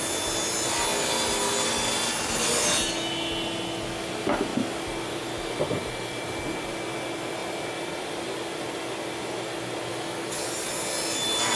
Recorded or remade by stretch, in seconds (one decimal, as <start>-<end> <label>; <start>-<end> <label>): 0.0-9.9 recorded; 9.9-10.4 remade; 10.4-11.6 recorded